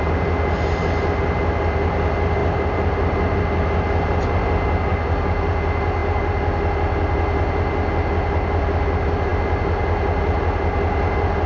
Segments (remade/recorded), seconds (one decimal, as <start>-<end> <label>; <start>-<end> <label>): 0.0-11.5 recorded